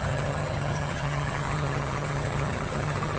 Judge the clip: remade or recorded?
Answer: remade